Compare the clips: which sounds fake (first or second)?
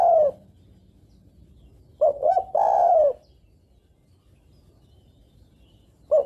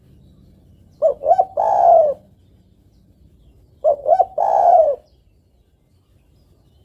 second